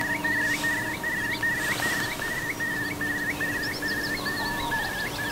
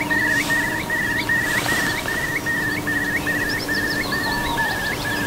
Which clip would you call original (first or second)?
first